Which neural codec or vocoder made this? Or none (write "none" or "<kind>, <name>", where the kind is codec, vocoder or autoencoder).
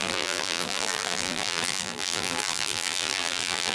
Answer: vocoder, BigVGAN v2